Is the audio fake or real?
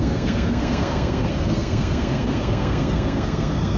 fake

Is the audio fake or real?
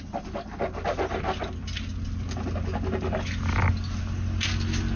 real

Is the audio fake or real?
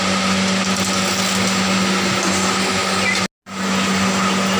real